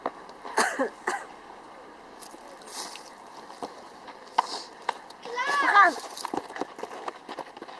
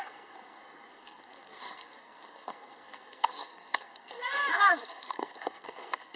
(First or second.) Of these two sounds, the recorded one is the first